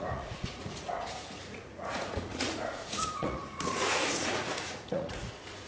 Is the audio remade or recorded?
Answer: remade